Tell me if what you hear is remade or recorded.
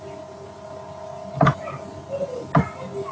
recorded